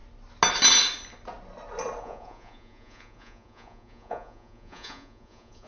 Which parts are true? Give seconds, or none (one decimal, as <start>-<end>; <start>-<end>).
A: 0.0-2.0